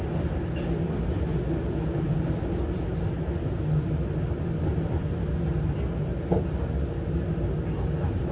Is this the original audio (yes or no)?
yes